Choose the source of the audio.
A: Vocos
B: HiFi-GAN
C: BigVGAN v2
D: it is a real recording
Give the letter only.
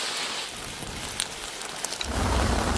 D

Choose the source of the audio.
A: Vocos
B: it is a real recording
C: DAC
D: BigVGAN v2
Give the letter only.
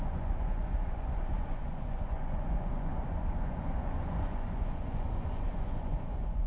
A